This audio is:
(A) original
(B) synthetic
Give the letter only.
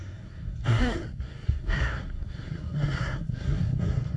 B